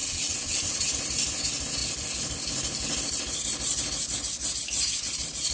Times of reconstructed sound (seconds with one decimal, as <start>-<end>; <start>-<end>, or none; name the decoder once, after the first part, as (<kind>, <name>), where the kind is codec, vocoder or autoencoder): 0.0-0.9 (vocoder, WaveNeXt)